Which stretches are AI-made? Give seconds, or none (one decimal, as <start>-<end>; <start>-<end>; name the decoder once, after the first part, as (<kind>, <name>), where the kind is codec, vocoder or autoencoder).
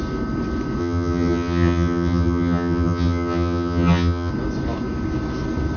0.8-4.3 (vocoder, HiFi-GAN)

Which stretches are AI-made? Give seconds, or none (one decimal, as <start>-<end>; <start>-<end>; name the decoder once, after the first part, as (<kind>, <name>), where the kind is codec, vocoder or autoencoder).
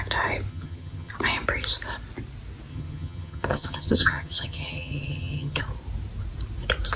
0.5-1.1 (vocoder, HiFi-GAN); 2.7-5.6